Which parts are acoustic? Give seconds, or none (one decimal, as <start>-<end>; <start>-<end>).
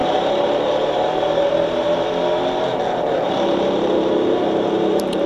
none